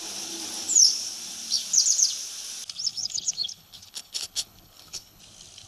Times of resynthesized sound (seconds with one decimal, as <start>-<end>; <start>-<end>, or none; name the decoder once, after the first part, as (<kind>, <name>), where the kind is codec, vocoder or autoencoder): 2.9-5.2 (codec, HILCodec)

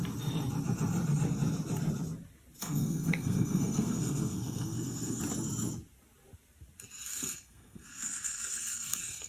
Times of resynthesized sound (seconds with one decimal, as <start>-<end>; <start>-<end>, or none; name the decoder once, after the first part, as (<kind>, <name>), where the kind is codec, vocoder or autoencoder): 2.6-5.2 (codec, SNAC); 7.1-9.3

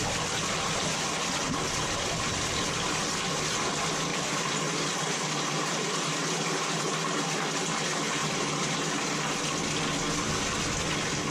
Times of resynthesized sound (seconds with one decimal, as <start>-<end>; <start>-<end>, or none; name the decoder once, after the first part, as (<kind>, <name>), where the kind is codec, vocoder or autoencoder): 4.1-6.8 (vocoder, BigVGAN v2); 8.2-9.4